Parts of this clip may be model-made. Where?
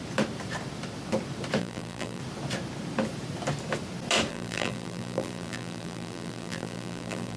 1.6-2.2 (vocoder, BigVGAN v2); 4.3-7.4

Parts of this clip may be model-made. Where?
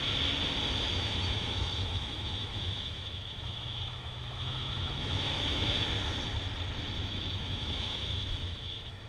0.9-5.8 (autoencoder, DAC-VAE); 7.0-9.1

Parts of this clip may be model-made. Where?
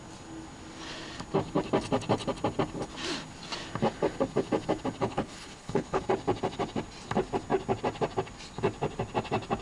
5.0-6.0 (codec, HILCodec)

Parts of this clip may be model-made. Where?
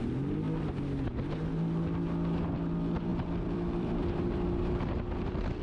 3.1-4.7 (vocoder, BigVGAN v2)